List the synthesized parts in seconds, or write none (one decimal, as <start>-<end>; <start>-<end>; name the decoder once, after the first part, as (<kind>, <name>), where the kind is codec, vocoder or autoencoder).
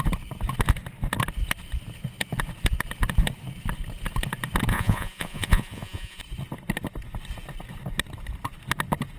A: 4.7-6.2 (vocoder, Vocos)